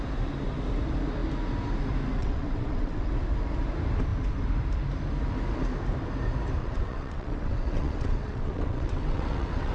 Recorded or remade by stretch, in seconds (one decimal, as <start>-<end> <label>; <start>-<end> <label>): 0.0-2.2 recorded; 2.2-3.1 remade; 3.1-6.6 recorded; 6.6-9.7 remade